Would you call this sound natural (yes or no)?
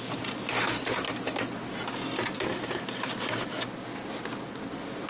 yes